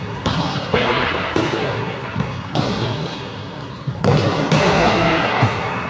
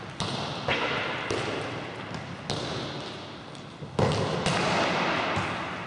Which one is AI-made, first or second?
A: first